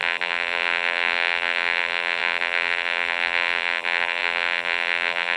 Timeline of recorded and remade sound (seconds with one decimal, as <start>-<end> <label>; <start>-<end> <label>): 0.0-5.4 remade